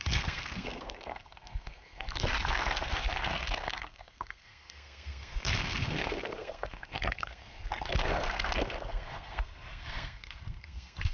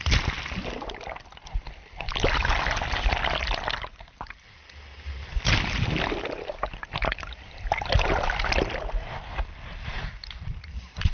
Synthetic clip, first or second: first